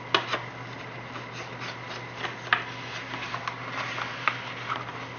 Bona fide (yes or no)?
yes